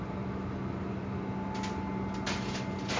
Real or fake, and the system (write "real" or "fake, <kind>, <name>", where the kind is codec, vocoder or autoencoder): real